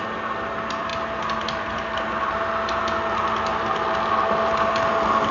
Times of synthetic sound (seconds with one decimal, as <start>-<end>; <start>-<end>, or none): none